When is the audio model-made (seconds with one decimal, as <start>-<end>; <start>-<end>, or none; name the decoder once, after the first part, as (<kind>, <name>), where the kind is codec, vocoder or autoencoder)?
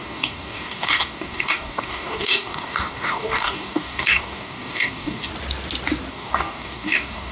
0.0-5.3 (codec, DAC); 6.1-7.3